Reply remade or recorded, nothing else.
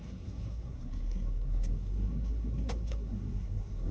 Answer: remade